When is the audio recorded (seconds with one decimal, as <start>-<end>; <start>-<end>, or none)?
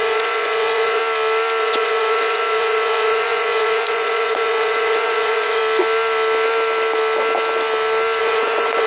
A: 1.0-1.6; 5.6-8.2